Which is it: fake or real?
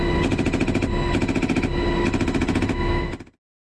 real